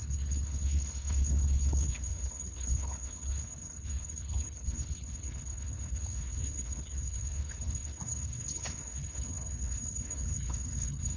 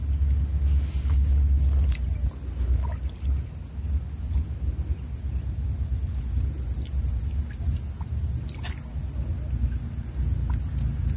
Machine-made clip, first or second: first